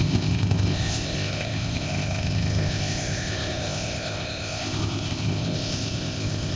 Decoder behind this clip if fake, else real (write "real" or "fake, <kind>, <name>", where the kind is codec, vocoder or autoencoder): fake, codec, ZipCodec